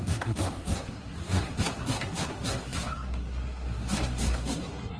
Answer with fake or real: fake